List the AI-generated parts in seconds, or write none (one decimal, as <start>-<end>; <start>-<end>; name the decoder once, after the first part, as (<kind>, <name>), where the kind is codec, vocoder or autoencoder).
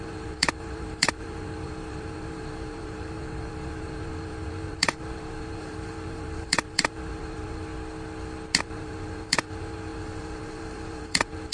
0.0-7.7 (vocoder, BigVGAN v2); 8.6-11.5